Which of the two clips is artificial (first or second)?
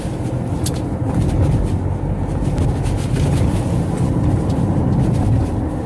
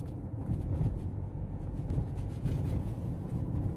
second